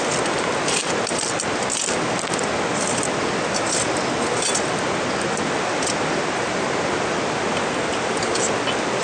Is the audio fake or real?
real